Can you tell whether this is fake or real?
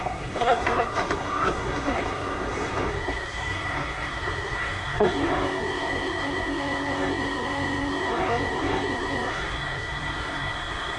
fake